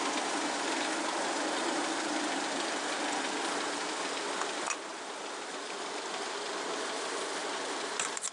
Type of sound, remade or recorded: remade